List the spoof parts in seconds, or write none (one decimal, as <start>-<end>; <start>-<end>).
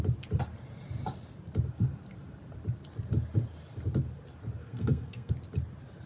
4.6-5.3